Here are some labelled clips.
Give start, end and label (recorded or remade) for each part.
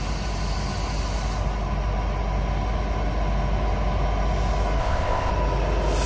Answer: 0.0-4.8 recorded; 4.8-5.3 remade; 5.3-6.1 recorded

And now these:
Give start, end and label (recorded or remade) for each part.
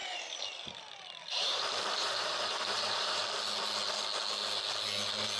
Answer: 0.0-3.2 remade; 3.2-5.4 recorded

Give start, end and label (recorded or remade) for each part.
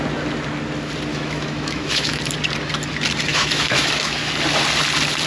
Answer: 0.0-1.1 recorded; 1.1-2.2 remade; 2.2-3.3 recorded; 3.3-4.3 remade; 4.3-5.3 recorded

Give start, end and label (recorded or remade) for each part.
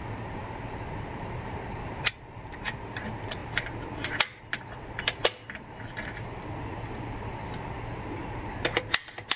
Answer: 0.0-1.0 recorded; 1.0-3.4 remade; 3.4-8.1 recorded; 8.1-9.4 remade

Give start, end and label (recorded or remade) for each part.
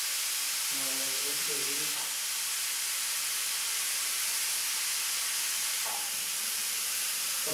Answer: 0.0-5.8 recorded; 5.8-7.5 remade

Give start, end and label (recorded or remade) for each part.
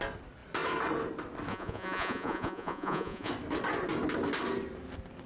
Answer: 0.0-1.5 recorded; 1.5-3.3 remade; 3.3-5.3 recorded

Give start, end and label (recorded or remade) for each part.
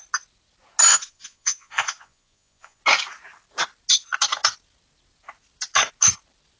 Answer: 0.0-0.9 recorded; 0.9-2.8 remade; 2.8-6.6 recorded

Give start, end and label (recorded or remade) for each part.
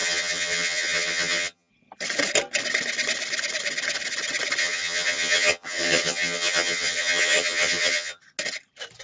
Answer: 0.0-1.7 remade; 1.7-4.6 recorded; 4.6-8.2 remade; 8.2-9.0 recorded